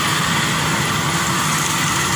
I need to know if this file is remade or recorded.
recorded